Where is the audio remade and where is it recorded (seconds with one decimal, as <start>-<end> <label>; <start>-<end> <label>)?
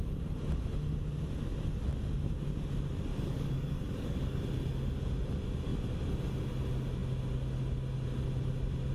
0.0-3.1 recorded; 3.1-4.4 remade; 4.4-8.9 recorded